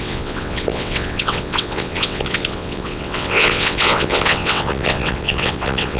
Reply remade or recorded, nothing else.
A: remade